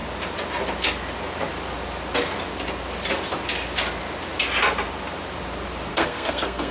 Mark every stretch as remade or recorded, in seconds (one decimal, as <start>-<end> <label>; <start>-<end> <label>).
0.0-5.9 recorded; 5.9-6.7 remade

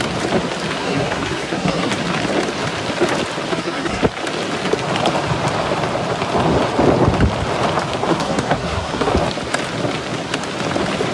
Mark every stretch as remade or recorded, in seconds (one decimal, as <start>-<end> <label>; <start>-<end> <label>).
0.0-0.8 recorded; 0.8-1.9 remade; 1.9-3.5 recorded; 3.5-4.0 remade; 4.0-8.1 recorded; 8.1-9.1 remade; 9.1-11.1 recorded